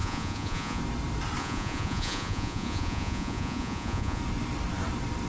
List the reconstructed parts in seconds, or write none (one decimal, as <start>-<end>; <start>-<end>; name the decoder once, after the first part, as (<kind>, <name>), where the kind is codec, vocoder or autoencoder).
0.0-0.8 (vocoder, Vocos); 1.4-4.2